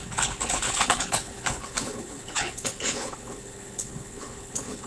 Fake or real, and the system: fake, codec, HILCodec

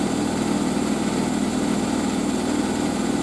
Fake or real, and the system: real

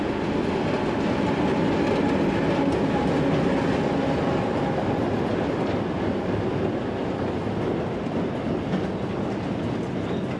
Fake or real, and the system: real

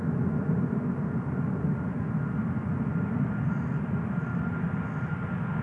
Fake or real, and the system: real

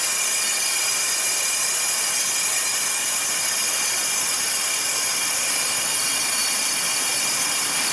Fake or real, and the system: real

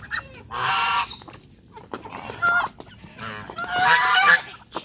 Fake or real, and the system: real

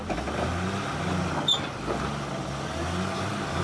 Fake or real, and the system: real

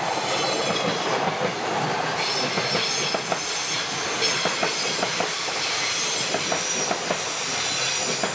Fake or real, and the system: real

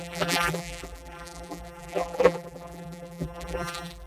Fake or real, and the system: fake, vocoder, BigVGAN v2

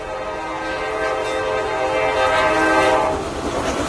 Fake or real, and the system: real